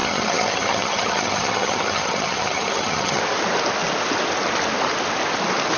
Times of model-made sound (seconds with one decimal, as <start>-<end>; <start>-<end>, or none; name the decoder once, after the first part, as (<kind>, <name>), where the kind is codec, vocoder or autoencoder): 0.0-3.2 (vocoder, HiFi-GAN)